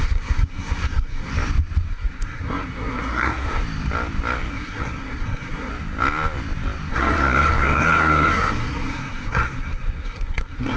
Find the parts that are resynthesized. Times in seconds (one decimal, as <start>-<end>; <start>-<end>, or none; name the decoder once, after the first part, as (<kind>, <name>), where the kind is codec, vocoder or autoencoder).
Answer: 0.0-1.3 (codec, SNAC); 1.9-3.6; 4.5-5.7; 6.9-10.8